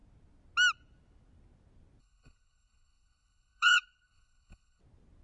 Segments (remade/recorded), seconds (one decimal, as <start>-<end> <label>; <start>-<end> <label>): 0.0-2.0 recorded; 2.0-4.8 remade; 4.8-5.2 recorded